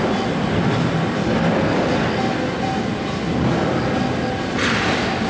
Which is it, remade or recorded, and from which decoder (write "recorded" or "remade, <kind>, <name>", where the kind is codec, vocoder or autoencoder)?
recorded